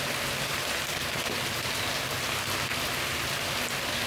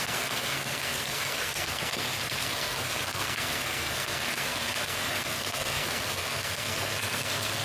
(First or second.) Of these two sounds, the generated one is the second